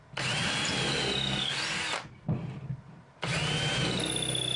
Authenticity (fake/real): real